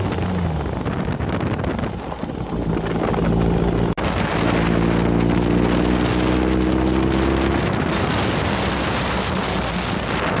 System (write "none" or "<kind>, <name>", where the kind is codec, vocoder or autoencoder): none